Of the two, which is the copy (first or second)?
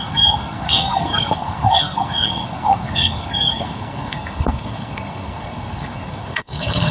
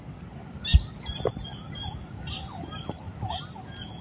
first